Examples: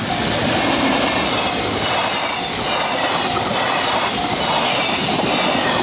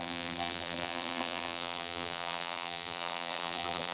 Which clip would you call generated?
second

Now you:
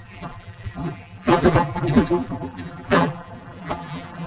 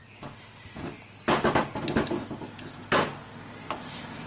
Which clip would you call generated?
first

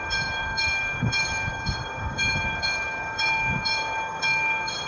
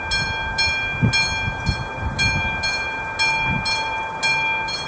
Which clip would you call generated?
first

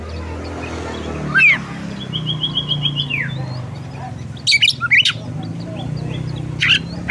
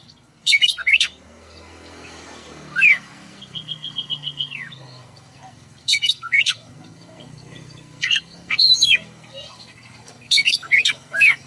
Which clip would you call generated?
second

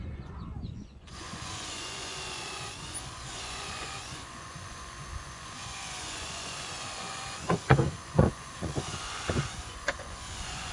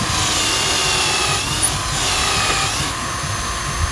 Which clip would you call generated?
first